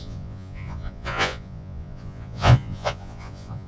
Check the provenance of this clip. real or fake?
fake